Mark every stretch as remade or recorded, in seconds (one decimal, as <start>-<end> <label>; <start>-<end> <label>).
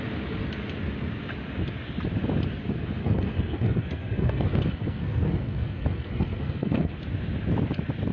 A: 0.0-3.0 recorded; 3.0-7.0 remade; 7.0-8.1 recorded